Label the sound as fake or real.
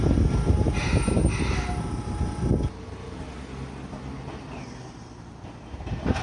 real